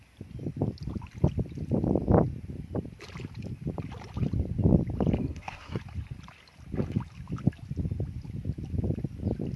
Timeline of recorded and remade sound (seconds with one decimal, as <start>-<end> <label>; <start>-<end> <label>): 0.0-5.2 recorded; 5.2-5.8 remade; 5.8-9.6 recorded